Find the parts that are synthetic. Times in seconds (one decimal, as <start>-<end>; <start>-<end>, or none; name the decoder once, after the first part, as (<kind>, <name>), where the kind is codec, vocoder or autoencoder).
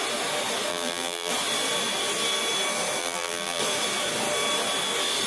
0.7-1.3 (vocoder, BigVGAN v2); 3.0-3.6